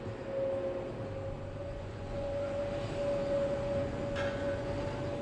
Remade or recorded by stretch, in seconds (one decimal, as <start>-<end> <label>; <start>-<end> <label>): 0.0-1.6 recorded; 1.6-2.6 remade; 2.6-3.2 recorded; 3.2-4.7 remade; 4.7-5.2 recorded